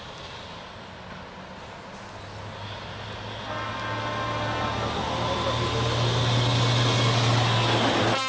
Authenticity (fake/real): real